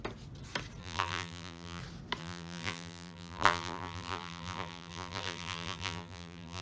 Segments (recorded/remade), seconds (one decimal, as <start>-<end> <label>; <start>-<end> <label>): 0.0-0.8 recorded; 0.8-1.8 remade; 1.8-2.2 recorded; 2.2-6.6 remade